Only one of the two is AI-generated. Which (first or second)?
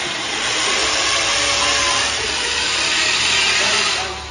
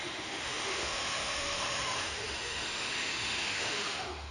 second